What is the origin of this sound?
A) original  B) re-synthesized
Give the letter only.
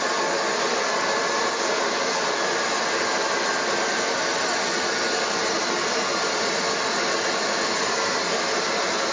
A